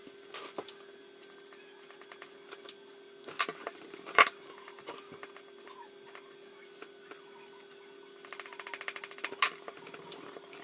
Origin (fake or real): real